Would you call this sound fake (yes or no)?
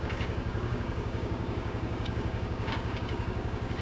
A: yes